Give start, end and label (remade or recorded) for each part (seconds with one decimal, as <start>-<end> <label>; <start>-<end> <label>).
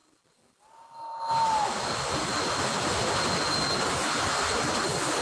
0.0-5.2 recorded